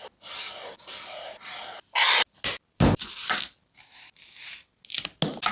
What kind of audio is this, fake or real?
real